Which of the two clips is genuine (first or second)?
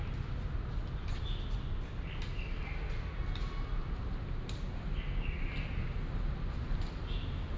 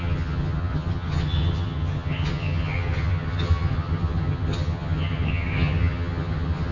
first